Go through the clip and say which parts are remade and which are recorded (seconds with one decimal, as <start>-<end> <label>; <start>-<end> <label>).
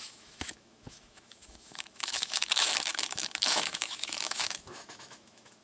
0.0-5.6 remade